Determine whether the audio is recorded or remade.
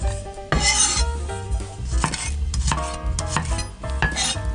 recorded